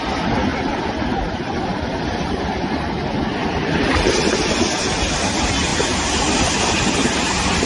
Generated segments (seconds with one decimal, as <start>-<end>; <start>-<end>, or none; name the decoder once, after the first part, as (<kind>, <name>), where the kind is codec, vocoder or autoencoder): 0.5-2.9 (vocoder, BigVGAN v2); 3.4-4.2